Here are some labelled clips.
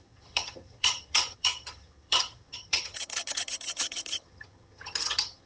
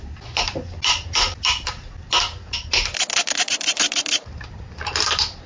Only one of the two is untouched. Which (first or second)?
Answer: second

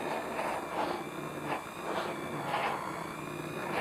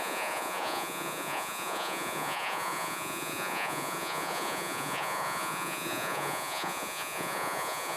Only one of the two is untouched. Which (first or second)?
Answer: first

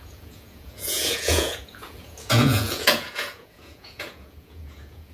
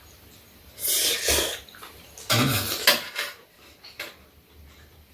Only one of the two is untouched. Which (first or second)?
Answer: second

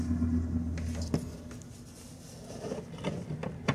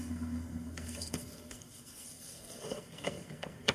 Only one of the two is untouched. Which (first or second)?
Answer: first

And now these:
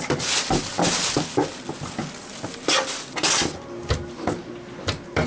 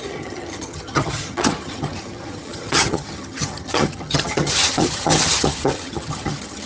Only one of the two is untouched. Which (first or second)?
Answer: first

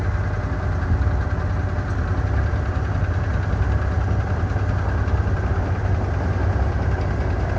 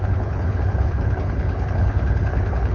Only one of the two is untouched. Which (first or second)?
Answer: first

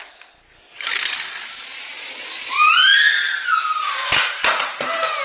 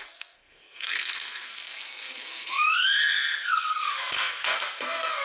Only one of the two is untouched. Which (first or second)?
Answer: first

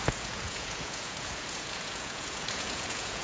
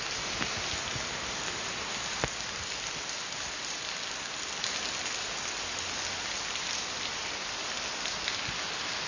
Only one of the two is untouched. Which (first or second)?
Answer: second